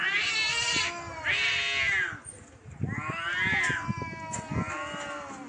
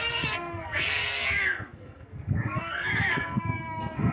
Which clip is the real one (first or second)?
first